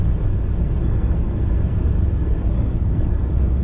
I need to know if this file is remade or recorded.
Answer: remade